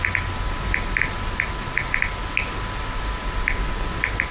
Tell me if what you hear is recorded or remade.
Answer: recorded